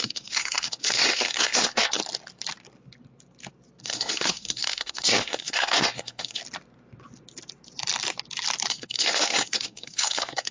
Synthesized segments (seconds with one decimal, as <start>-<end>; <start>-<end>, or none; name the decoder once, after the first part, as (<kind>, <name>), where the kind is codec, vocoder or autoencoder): 0.0-2.0 (codec, SNAC); 3.8-6.4; 8.7-10.5